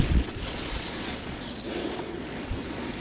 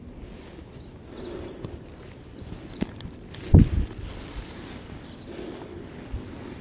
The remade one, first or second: first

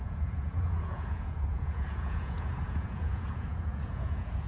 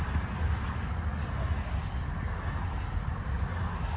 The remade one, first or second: first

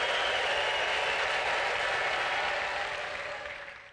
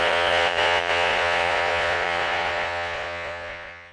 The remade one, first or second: second